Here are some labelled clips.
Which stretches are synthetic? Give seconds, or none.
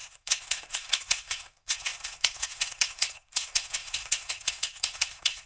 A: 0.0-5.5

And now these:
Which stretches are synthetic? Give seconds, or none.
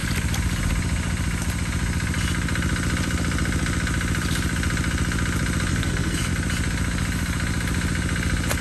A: 5.7-6.3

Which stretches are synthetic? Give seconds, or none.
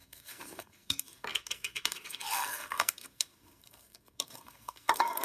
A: 0.0-5.2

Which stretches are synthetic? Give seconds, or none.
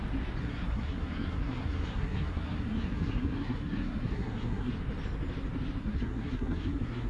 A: 0.4-4.7; 5.8-7.1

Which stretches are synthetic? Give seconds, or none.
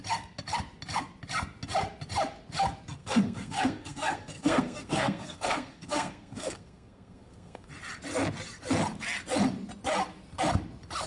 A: 3.0-7.7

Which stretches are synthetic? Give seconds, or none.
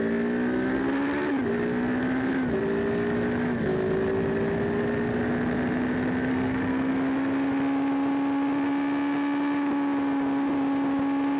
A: 6.3-6.9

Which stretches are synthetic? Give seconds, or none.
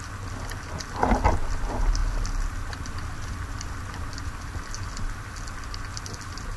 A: none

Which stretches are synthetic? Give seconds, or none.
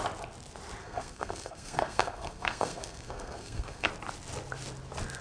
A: 0.8-3.9